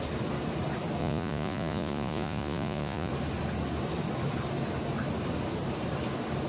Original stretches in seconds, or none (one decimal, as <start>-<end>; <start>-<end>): 0.0-1.0; 3.1-6.5